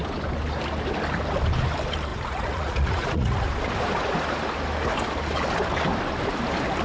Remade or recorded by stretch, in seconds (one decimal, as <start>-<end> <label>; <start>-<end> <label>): 0.0-2.1 recorded; 2.1-3.5 remade; 3.5-6.8 recorded